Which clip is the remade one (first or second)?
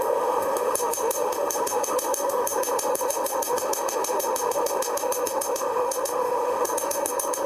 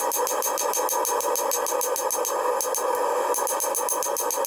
first